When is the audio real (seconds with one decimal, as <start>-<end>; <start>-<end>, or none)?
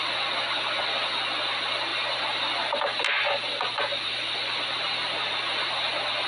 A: 0.0-1.9; 2.4-6.3